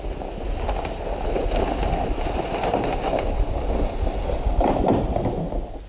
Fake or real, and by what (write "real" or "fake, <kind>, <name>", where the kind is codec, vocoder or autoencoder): real